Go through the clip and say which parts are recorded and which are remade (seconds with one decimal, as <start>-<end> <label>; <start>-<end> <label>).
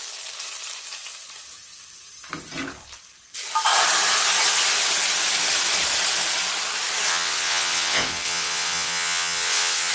0.0-7.1 recorded; 7.1-9.9 remade